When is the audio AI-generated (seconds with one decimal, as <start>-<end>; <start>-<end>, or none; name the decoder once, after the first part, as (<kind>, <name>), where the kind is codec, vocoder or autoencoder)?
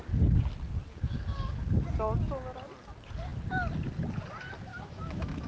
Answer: 0.9-1.7 (autoencoder, DAC-VAE); 4.7-5.5